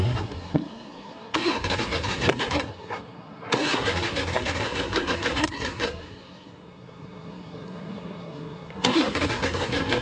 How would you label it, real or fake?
fake